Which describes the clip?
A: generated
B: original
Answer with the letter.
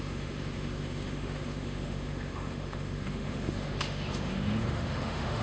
A